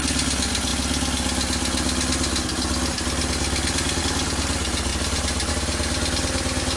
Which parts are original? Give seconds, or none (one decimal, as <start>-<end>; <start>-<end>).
0.0-6.8